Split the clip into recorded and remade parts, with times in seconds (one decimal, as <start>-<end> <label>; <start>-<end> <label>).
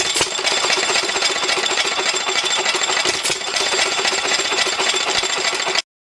0.0-0.5 recorded; 0.5-2.9 remade; 2.9-3.3 recorded; 3.3-4.9 remade; 4.9-6.0 recorded